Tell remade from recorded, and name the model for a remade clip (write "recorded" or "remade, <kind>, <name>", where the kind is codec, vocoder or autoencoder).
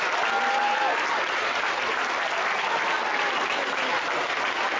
recorded